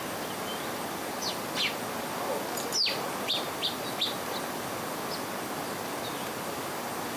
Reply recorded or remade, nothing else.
recorded